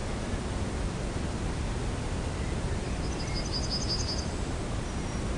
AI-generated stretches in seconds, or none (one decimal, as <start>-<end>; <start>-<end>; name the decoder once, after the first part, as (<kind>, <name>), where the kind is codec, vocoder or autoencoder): none